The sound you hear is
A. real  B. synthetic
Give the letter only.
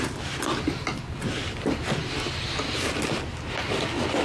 A